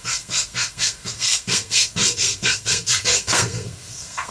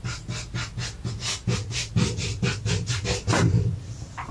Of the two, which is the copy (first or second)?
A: first